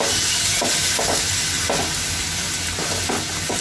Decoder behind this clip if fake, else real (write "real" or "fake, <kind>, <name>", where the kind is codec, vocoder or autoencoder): real